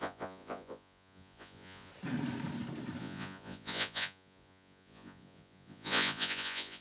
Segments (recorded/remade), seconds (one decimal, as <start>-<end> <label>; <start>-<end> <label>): 0.0-1.9 remade; 1.9-3.0 recorded; 3.0-6.8 remade